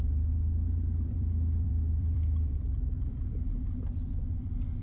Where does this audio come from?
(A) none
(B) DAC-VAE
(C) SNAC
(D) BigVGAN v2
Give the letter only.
D